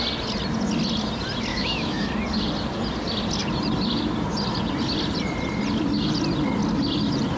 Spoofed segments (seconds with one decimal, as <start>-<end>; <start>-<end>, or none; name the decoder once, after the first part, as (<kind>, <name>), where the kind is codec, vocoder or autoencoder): 1.5-2.1 (autoencoder, DAC-VAE)